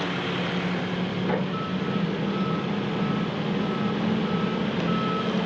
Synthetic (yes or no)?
no